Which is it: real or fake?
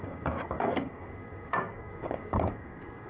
fake